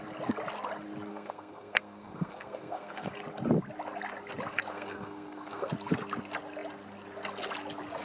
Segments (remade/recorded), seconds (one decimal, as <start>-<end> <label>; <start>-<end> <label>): 0.0-1.1 recorded; 1.1-3.1 remade; 3.1-4.7 recorded; 4.7-5.7 remade; 5.7-8.0 recorded